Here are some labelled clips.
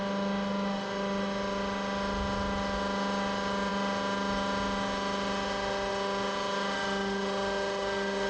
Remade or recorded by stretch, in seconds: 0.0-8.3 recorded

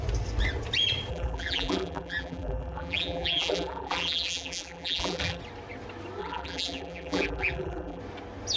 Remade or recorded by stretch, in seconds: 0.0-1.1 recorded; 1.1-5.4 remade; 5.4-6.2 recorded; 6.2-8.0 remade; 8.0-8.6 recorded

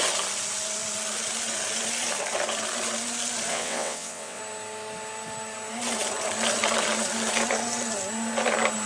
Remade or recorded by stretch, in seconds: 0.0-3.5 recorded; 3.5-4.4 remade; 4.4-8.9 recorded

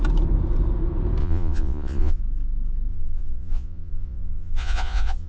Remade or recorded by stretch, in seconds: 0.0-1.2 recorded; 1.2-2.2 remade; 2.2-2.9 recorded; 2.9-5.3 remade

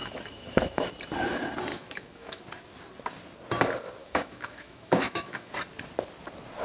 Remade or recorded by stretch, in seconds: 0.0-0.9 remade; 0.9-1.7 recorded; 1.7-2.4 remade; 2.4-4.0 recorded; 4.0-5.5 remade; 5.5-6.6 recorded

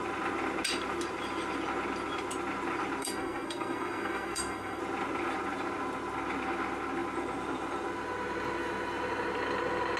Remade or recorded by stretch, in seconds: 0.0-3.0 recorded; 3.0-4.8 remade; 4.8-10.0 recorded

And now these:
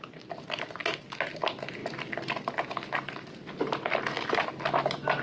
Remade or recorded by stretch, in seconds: 0.0-5.2 recorded

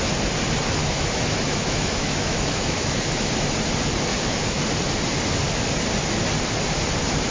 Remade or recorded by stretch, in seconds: 0.0-0.8 recorded; 0.8-3.3 remade; 3.3-4.1 recorded; 4.1-4.6 remade; 4.6-7.3 recorded